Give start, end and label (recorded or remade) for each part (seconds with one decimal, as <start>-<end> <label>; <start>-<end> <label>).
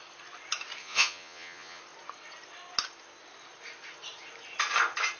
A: 0.0-0.8 recorded; 0.8-1.8 remade; 1.8-5.2 recorded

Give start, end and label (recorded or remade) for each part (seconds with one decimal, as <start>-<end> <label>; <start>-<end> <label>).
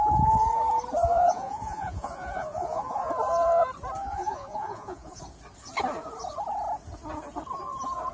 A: 0.0-1.0 recorded; 1.0-3.1 remade; 3.1-4.0 recorded; 4.0-5.2 remade; 5.2-8.1 recorded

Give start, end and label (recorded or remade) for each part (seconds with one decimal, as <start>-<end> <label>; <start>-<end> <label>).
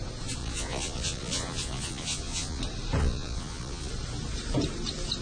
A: 0.0-0.4 recorded; 0.4-2.6 remade; 2.6-3.0 recorded; 3.0-3.9 remade; 3.9-5.2 recorded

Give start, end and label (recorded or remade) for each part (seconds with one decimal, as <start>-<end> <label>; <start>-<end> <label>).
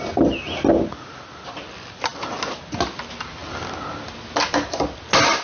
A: 0.0-5.4 recorded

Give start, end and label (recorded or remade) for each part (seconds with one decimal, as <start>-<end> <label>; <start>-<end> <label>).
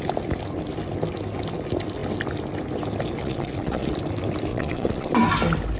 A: 0.0-3.2 recorded; 3.2-3.9 remade; 3.9-4.5 recorded; 4.5-5.1 remade; 5.1-5.8 recorded